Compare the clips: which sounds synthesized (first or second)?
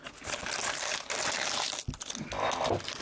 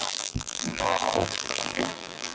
second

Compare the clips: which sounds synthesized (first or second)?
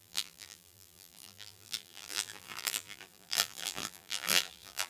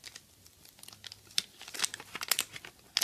first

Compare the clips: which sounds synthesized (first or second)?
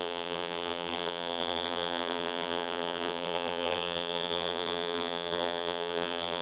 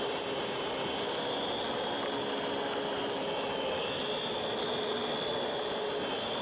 first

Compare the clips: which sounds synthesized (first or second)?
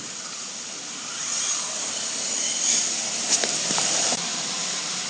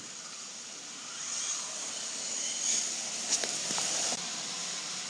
first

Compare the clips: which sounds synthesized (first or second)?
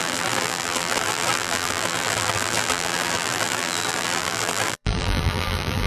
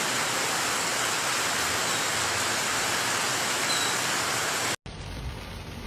first